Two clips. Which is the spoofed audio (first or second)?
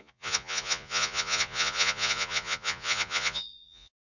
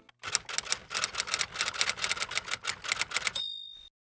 first